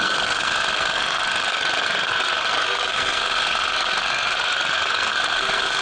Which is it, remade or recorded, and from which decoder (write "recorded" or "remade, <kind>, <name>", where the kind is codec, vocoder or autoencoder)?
remade, codec, SNAC